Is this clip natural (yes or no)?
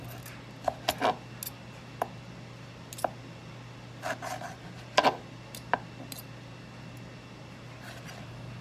yes